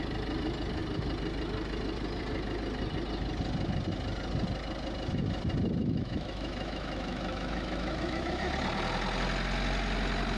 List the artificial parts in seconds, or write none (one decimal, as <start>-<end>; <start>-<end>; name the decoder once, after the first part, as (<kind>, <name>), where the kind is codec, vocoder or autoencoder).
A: 5.8-8.5 (autoencoder, DAC-VAE)